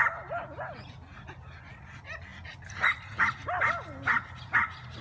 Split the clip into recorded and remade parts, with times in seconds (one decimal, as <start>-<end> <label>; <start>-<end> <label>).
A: 0.0-5.0 recorded